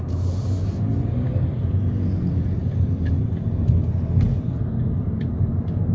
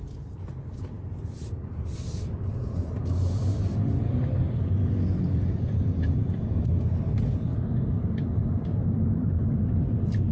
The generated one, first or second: second